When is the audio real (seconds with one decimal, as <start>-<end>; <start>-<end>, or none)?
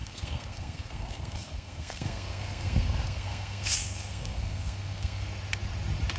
5.3-6.2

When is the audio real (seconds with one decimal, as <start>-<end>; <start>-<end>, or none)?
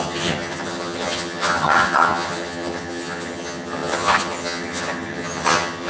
none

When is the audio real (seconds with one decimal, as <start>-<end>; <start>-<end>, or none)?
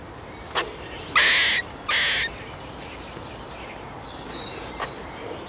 0.0-5.5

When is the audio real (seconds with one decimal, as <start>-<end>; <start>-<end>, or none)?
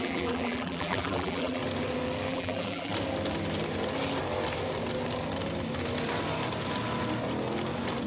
1.6-2.3; 2.9-8.1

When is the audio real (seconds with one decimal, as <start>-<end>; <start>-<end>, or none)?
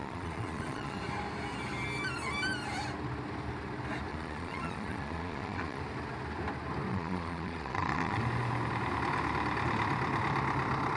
1.0-4.1; 5.8-6.9; 8.2-11.0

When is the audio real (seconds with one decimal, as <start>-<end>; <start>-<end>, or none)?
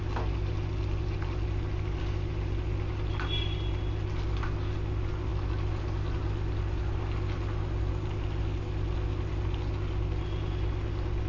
0.0-11.3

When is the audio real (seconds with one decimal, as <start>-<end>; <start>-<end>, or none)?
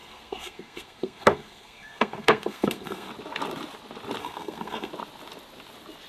3.1-4.2; 4.9-6.1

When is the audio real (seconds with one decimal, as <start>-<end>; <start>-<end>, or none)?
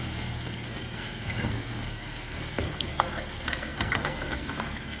none